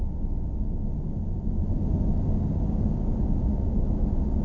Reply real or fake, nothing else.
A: real